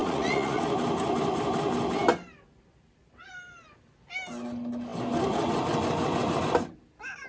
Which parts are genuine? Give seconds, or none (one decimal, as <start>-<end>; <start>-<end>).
0.6-7.3